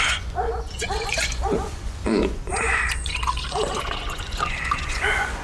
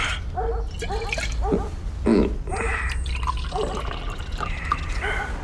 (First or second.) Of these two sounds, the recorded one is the second